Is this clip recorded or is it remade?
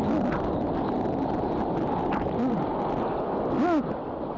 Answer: recorded